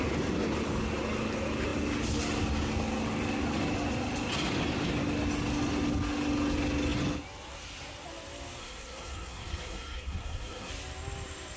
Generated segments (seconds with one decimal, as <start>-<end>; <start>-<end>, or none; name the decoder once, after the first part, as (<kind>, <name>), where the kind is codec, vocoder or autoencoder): 8.6-10.7 (codec, SNAC)